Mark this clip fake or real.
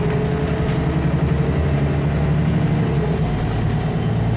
real